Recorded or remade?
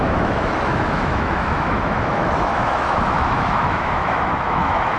remade